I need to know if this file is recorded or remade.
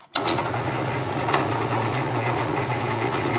remade